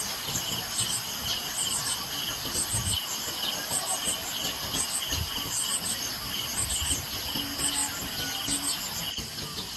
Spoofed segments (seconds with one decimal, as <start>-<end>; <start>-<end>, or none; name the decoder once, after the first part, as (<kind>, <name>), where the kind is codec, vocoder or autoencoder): none